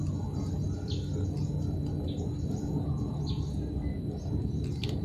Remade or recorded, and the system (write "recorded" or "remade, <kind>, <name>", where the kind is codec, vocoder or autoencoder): recorded